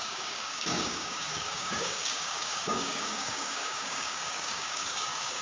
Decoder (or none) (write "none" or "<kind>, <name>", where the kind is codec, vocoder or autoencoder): codec, DAC